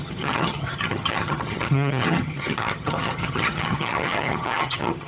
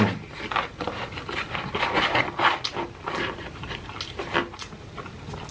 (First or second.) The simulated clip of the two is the first